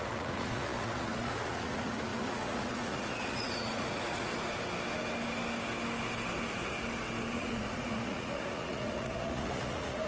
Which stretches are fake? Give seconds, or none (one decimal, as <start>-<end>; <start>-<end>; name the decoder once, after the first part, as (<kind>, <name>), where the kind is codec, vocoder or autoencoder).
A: 0.0-4.3 (vocoder, Vocos); 7.3-10.1